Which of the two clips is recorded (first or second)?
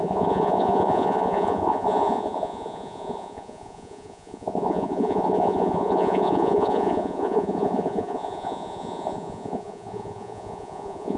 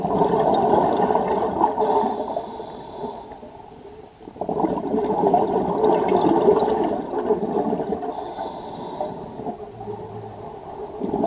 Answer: second